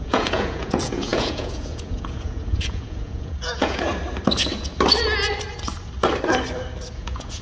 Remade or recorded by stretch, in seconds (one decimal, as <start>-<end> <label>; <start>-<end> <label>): 0.0-3.9 remade; 3.9-6.9 recorded; 6.9-7.4 remade